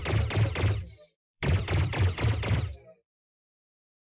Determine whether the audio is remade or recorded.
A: remade